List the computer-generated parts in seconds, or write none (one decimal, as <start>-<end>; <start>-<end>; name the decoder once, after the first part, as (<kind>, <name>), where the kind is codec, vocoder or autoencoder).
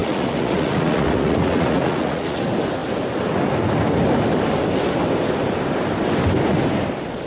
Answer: 0.0-2.4 (vocoder, Vocos)